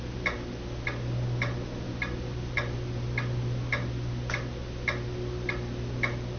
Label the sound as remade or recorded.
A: recorded